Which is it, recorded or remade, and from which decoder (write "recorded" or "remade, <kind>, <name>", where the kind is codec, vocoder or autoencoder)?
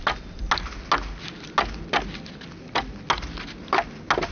recorded